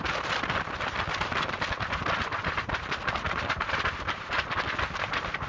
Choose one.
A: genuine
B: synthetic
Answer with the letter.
B